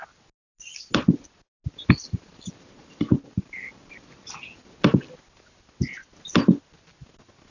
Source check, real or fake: real